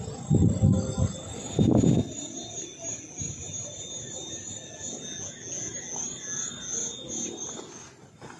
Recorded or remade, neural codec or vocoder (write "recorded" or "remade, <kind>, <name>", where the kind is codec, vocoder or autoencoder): recorded